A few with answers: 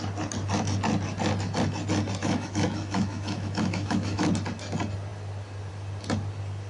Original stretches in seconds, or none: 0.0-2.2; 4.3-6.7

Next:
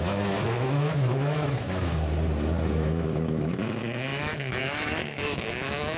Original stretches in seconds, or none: 1.9-2.7